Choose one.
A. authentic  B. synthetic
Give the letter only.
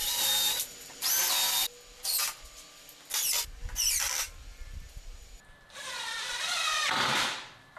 B